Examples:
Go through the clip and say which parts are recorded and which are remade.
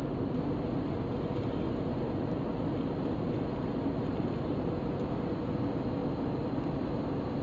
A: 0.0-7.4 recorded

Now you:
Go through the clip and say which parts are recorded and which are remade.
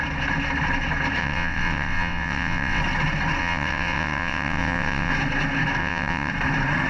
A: 0.0-1.2 recorded; 1.2-2.8 remade; 2.8-3.4 recorded; 3.4-5.1 remade; 5.1-5.8 recorded; 5.8-6.3 remade; 6.3-6.9 recorded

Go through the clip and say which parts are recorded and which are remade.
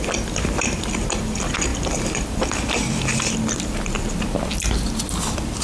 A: 0.0-5.6 remade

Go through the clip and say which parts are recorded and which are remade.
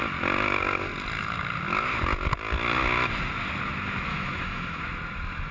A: 0.0-4.1 recorded; 4.1-4.8 remade; 4.8-5.5 recorded